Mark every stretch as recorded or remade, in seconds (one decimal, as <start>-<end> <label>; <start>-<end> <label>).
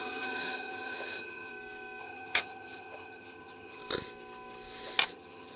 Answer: 0.0-1.5 remade; 1.5-2.0 recorded; 2.0-3.8 remade; 3.8-5.1 recorded; 5.1-5.6 remade